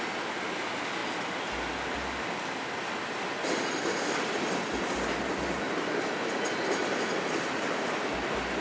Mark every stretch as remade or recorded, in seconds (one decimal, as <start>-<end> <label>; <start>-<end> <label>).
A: 0.0-8.6 recorded